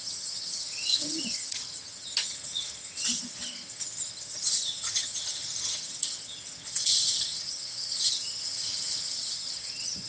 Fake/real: fake